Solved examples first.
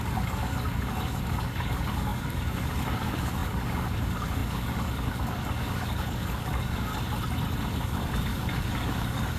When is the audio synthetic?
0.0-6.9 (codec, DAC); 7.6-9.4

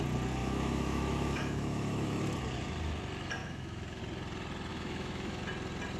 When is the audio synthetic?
0.4-2.2 (autoencoder, DAC-VAE); 3.4-4.0; 4.7-5.4

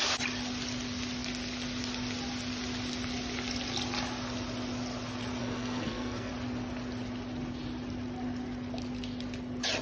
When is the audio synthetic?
5.4-6.3 (codec, SNAC)

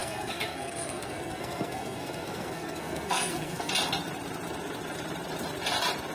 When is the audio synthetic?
0.0-3.7 (codec, SNAC)

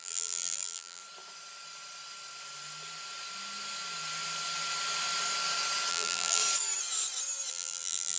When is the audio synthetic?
0.0-1.0 (vocoder, BigVGAN v2); 5.9-6.4; 7.5-8.2

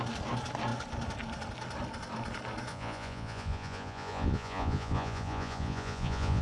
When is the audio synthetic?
2.7-6.4 (vocoder, Vocos)